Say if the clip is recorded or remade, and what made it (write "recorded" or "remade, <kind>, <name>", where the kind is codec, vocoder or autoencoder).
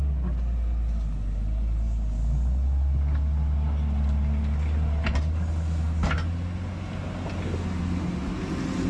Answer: recorded